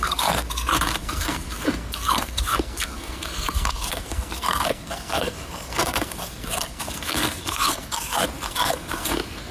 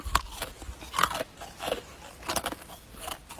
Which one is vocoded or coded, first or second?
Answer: first